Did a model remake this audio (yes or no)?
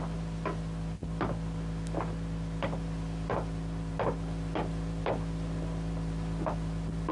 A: no